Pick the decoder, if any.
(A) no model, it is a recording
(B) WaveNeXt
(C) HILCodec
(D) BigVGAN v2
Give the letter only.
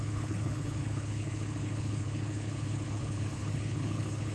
C